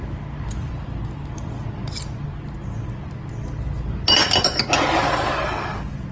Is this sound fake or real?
real